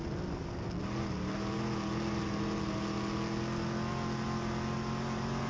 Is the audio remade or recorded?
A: recorded